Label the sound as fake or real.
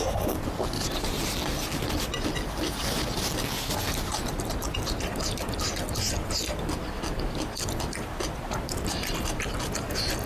real